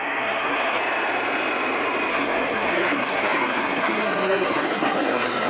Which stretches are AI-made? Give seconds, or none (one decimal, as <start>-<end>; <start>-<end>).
0.0-0.8; 2.1-5.5